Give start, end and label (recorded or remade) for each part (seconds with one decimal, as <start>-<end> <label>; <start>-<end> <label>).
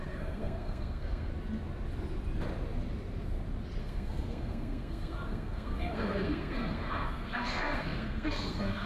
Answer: 0.0-1.3 remade; 1.3-3.8 recorded; 3.8-8.9 remade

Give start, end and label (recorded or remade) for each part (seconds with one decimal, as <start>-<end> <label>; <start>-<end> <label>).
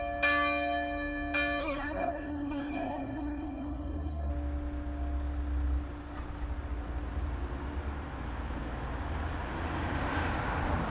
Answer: 0.0-1.6 recorded; 1.6-4.3 remade; 4.3-10.9 recorded